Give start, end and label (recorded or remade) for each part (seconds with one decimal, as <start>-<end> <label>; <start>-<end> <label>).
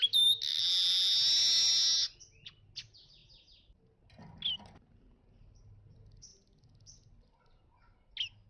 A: 0.0-8.5 recorded